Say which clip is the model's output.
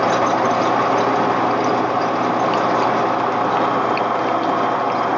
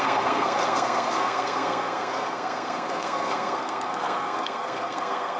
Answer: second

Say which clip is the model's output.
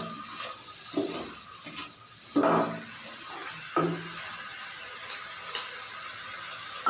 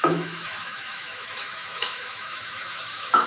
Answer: second